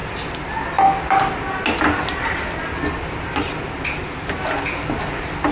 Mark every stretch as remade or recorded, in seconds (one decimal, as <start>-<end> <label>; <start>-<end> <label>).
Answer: 0.0-5.5 recorded